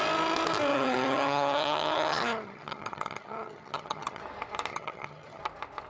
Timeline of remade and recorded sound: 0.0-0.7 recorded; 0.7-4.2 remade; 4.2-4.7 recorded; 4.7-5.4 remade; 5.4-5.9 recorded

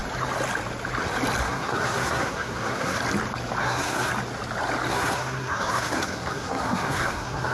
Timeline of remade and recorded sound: 0.0-1.4 recorded; 1.4-3.0 remade; 3.0-3.6 recorded; 3.6-4.1 remade; 4.1-4.9 recorded; 4.9-7.5 remade

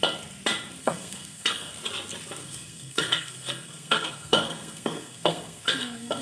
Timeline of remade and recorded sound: 0.0-0.8 recorded; 0.8-1.7 remade; 1.7-2.4 recorded; 2.4-6.2 remade

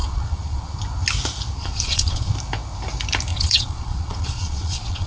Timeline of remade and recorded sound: 0.0-0.7 remade; 0.7-1.6 recorded; 1.6-2.3 remade; 2.3-3.3 recorded; 3.3-5.1 remade

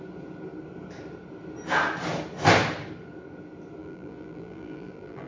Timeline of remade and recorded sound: 0.0-3.8 recorded; 3.8-5.3 remade